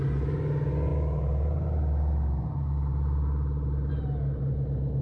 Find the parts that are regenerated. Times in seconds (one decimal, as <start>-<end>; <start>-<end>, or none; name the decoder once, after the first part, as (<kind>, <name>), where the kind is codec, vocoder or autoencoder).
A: none